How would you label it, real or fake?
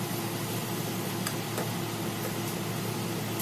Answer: real